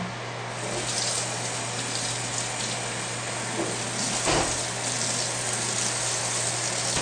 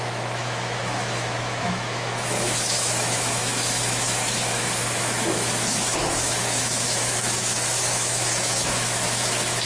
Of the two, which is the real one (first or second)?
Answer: first